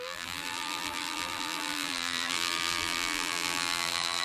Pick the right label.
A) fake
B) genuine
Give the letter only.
A